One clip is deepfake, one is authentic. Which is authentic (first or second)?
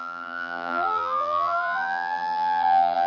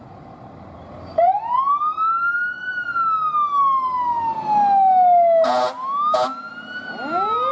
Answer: second